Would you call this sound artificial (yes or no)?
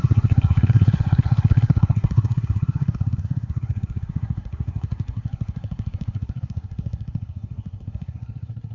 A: yes